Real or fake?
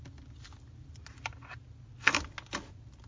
real